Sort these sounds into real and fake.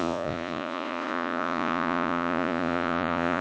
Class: fake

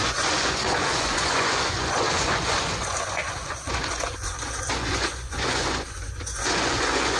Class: fake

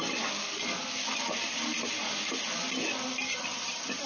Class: real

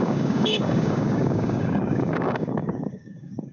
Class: fake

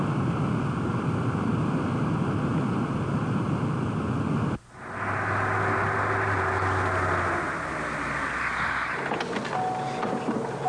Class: real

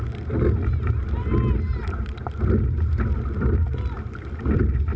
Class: real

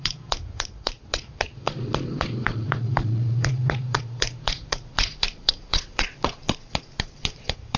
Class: fake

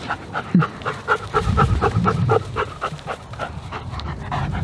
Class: fake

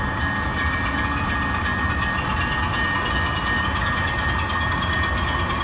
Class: real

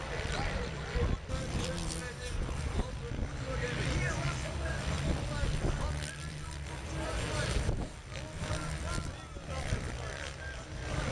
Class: real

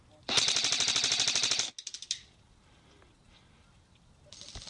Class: real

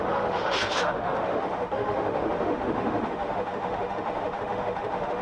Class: fake